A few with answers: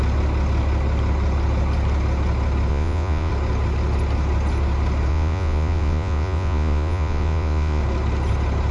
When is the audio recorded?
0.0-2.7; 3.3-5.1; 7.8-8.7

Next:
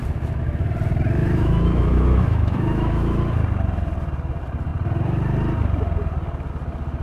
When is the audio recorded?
0.0-1.2; 3.2-7.0

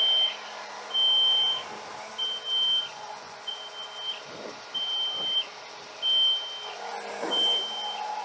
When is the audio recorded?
0.0-2.9; 3.5-8.2

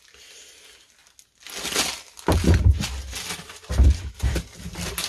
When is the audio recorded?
0.0-5.1

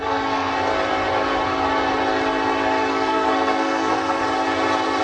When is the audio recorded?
0.5-2.9; 4.2-5.0

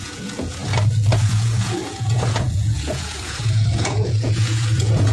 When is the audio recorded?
0.6-1.2

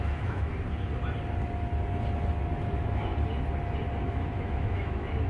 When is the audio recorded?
0.5-2.7; 3.1-4.0